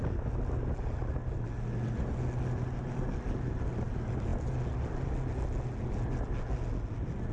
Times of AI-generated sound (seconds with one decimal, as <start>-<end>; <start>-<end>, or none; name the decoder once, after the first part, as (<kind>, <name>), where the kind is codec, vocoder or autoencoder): none

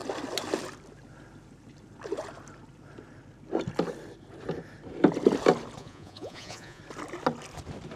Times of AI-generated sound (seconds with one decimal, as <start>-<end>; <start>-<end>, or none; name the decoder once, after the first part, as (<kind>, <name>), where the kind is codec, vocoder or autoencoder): 5.8-6.8 (vocoder, Vocos)

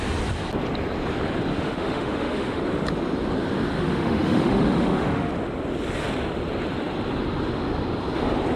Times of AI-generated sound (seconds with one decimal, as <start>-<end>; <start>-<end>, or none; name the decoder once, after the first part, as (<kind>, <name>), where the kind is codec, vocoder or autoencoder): 1.5-2.6 (autoencoder, DAC-VAE); 3.7-5.3

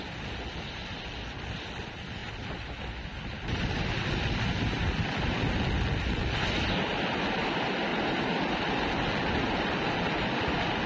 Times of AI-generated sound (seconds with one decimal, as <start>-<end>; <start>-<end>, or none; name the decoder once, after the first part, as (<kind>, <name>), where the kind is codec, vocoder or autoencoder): 7.9-8.4 (vocoder, BigVGAN v2)

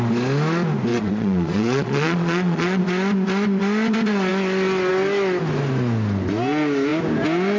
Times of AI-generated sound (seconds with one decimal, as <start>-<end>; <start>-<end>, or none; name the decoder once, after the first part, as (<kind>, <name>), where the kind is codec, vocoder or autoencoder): 0.9-2.8 (vocoder, Vocos)